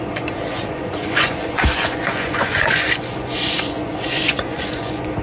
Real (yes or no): no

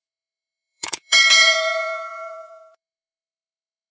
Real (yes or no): no